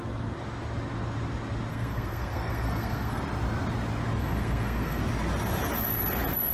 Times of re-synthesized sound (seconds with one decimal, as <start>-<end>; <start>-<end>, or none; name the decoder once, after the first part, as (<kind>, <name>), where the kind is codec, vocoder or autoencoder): 1.7-3.2 (codec, SNAC); 4.2-5.0